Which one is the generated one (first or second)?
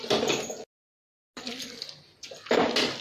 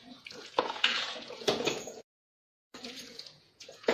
second